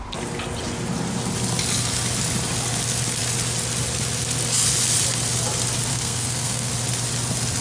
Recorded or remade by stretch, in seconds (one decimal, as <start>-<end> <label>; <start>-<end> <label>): 0.0-5.9 recorded; 5.9-6.7 remade; 6.7-7.6 recorded